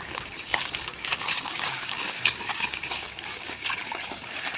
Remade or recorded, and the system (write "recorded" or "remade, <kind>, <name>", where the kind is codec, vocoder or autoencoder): remade, codec, DAC